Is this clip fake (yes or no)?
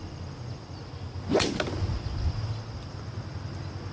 no